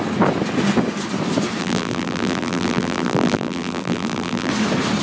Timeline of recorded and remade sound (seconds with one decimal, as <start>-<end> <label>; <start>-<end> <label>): 0.0-1.6 recorded; 1.6-4.5 remade; 4.5-5.0 recorded